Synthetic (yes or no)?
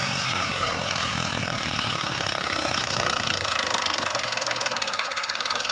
yes